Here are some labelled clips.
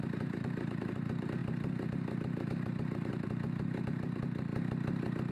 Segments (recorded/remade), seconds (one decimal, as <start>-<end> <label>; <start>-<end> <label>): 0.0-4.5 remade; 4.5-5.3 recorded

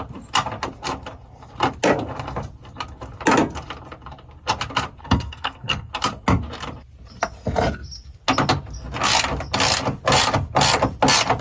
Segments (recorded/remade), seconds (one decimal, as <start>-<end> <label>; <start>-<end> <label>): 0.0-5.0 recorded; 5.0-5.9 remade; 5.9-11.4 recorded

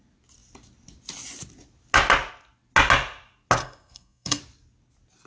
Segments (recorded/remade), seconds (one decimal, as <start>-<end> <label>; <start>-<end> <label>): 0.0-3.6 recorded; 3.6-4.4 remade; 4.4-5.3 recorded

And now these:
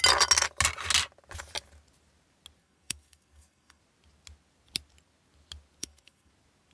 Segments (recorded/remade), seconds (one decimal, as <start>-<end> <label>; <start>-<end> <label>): 0.0-2.6 recorded; 2.6-3.8 remade; 3.8-5.8 recorded; 5.8-6.3 remade; 6.3-6.7 recorded

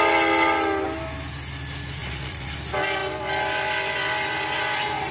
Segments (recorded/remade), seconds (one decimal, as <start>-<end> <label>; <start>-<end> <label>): 0.0-2.0 recorded; 2.0-2.5 remade; 2.5-5.1 recorded

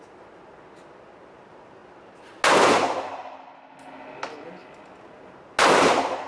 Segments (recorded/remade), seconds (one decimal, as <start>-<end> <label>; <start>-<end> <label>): 0.0-6.3 recorded

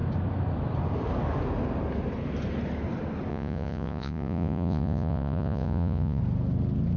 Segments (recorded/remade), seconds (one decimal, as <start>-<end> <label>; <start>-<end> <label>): 0.0-3.3 recorded; 3.3-6.2 remade; 6.2-7.0 recorded

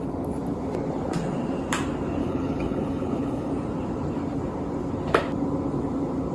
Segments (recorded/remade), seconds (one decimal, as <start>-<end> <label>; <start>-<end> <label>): 0.0-2.2 recorded; 2.2-3.5 remade; 3.5-6.3 recorded